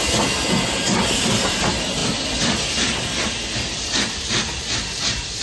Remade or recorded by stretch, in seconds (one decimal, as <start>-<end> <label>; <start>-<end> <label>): 0.0-5.4 recorded